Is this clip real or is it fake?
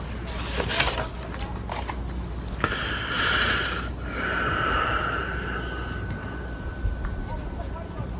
real